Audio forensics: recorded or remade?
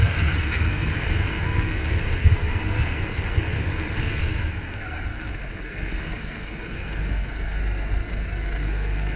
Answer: remade